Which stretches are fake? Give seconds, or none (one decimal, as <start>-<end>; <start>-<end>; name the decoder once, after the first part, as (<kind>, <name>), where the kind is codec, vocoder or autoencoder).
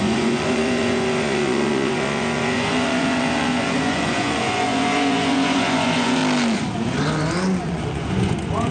0.0-6.2 (vocoder, Vocos); 7.6-8.7